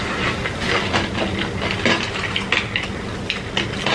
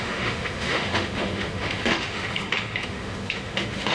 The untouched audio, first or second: first